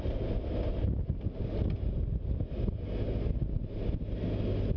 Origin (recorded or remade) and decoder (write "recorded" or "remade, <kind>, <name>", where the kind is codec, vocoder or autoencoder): recorded